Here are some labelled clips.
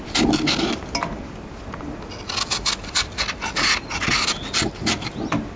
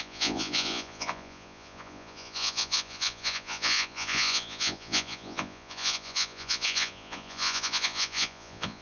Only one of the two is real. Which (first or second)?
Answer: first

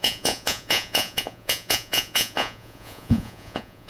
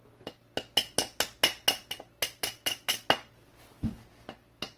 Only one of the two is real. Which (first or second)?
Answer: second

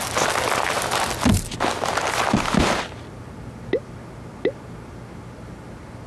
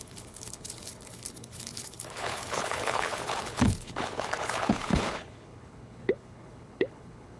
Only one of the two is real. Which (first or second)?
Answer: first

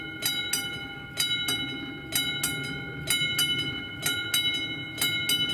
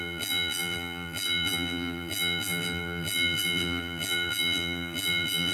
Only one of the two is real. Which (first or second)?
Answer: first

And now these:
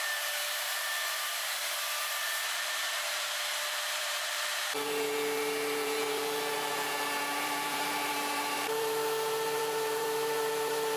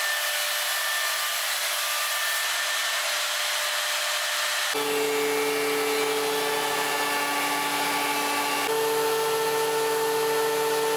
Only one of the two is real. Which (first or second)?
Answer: second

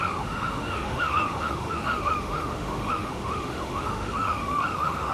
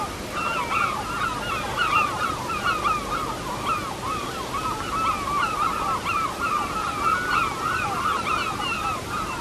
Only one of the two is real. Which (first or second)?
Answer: second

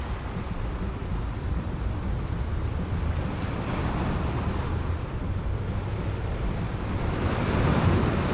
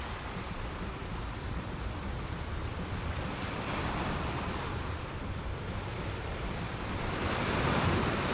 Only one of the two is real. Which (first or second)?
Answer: first